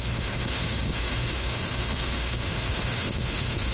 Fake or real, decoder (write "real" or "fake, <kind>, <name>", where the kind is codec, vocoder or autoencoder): fake, autoencoder, DAC-VAE